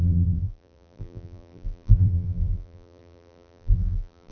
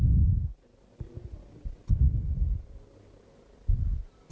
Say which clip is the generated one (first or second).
first